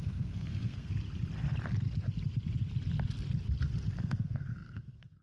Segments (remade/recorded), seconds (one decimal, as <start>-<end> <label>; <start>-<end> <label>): 0.0-0.9 remade; 0.9-4.0 recorded; 4.0-5.2 remade